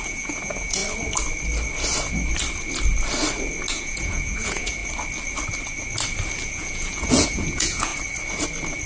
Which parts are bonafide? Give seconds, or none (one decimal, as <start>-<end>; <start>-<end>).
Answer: 0.8-3.7; 4.8-6.5; 7.9-8.9